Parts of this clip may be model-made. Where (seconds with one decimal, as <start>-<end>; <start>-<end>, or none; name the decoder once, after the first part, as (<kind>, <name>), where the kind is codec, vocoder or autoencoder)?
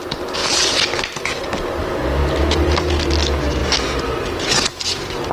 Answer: none